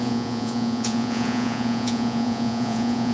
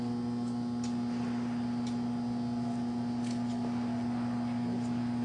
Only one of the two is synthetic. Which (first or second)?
first